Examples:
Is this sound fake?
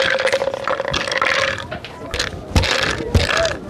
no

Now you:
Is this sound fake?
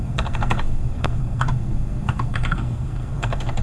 yes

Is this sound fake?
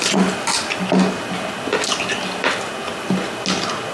no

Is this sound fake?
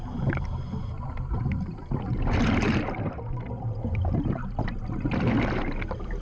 no